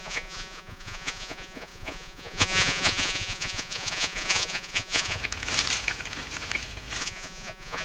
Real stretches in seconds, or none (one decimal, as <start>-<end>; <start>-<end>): 5.2-7.0